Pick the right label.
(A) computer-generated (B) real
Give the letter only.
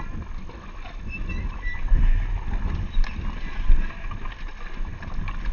B